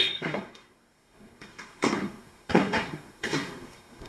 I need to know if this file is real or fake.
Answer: fake